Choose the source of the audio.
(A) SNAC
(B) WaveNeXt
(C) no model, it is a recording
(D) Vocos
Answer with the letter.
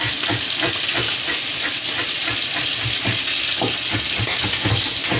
C